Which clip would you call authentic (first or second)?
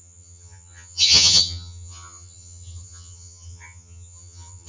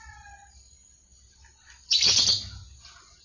second